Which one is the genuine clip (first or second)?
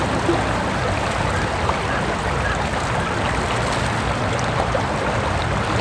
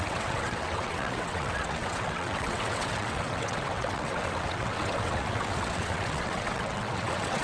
first